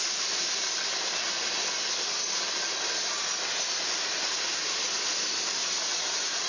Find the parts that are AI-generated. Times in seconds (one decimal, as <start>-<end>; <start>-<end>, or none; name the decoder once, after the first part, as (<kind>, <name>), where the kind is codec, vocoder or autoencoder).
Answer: 5.6-6.5 (vocoder, Vocos)